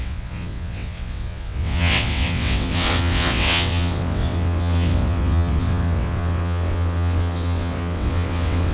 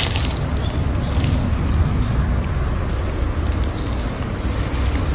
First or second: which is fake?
first